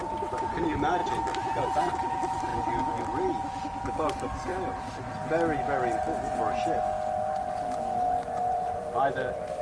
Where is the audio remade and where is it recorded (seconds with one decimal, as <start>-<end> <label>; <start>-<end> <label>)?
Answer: 0.0-8.5 recorded; 8.5-9.6 remade